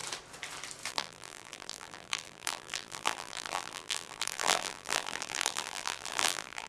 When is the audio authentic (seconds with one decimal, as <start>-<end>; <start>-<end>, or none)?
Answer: 0.0-0.9